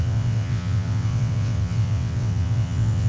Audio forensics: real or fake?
fake